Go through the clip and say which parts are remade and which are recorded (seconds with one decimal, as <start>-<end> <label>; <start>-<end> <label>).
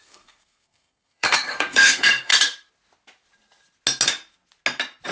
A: 0.0-2.3 remade; 2.3-5.1 recorded